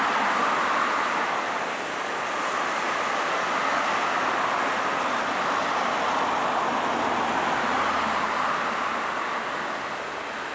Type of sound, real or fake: real